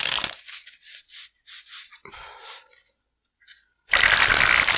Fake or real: real